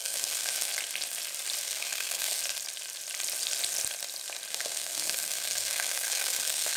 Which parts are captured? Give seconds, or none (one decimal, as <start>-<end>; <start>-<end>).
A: 0.7-1.6; 2.4-4.5